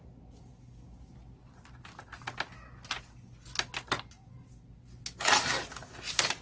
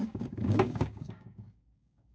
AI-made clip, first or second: second